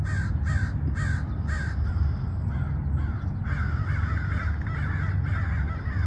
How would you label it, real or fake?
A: real